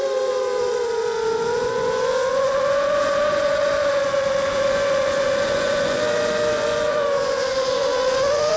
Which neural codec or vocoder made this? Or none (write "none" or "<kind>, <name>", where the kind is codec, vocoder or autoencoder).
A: vocoder, Vocos